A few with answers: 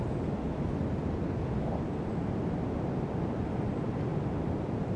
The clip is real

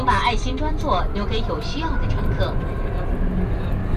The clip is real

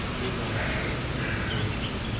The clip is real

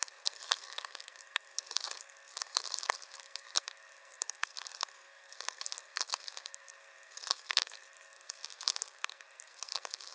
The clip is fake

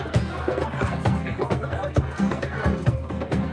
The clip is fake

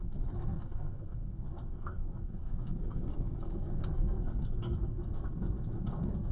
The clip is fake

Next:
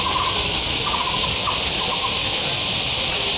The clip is real